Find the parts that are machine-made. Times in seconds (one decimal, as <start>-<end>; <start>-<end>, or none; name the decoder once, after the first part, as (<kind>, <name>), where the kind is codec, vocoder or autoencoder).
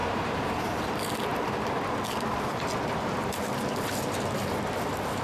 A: 0.0-0.8 (vocoder, BigVGAN v2)